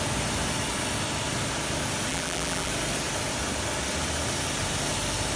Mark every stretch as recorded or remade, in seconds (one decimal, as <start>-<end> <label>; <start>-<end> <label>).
0.0-2.1 recorded; 2.1-2.7 remade; 2.7-5.4 recorded